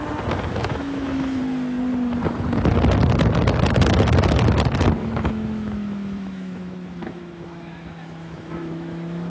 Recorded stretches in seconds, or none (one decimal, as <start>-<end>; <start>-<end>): 0.0-0.6; 1.4-5.0